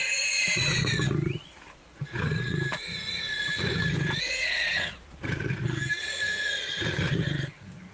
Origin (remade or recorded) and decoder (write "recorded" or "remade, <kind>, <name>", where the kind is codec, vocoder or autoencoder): remade, vocoder, Vocos